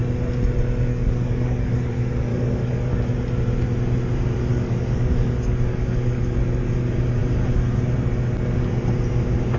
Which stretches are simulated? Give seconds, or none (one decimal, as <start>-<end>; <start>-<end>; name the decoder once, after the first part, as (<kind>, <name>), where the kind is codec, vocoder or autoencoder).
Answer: 0.9-1.9 (codec, DAC); 2.3-2.9; 4.5-6.3